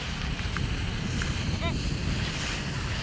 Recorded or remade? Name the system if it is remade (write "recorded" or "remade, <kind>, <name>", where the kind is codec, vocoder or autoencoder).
recorded